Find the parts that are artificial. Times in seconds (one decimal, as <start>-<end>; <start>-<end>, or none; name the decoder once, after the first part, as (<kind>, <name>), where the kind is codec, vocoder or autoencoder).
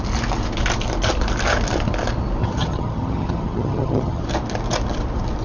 2.4-4.2 (vocoder, HiFi-GAN)